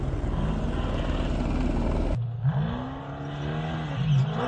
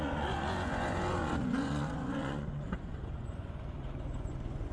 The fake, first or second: second